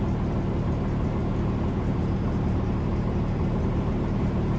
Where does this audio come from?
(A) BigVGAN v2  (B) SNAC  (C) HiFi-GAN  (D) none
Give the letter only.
D